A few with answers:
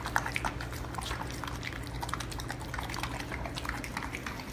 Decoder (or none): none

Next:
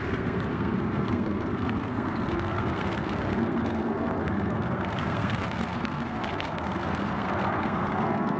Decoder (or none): codec, SNAC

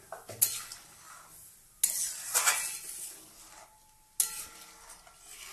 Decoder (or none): none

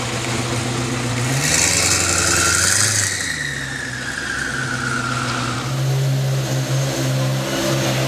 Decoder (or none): none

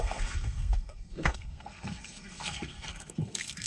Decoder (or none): codec, SNAC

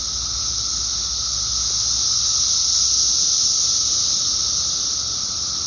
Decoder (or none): none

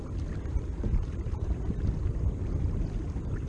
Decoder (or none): none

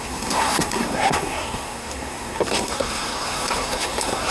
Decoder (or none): codec, SNAC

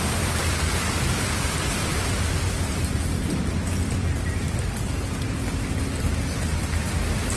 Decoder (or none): none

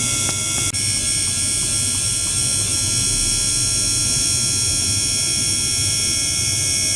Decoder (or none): none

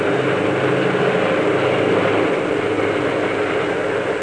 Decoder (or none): none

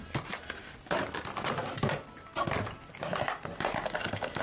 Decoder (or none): none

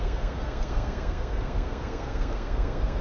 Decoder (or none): codec, SNAC